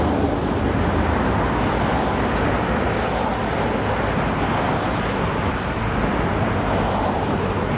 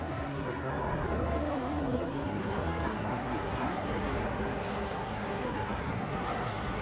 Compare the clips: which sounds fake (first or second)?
second